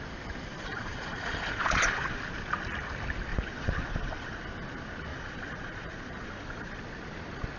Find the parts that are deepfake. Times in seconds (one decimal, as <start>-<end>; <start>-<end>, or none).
0.5-2.2; 3.3-4.4; 5.1-6.8